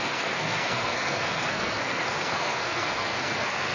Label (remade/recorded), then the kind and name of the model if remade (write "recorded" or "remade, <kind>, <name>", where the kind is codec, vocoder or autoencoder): remade, codec, SNAC